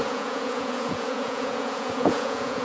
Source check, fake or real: fake